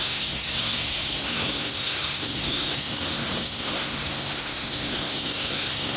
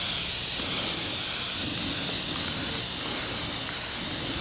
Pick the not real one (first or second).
first